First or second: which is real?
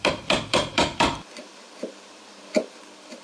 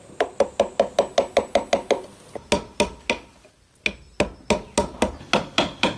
second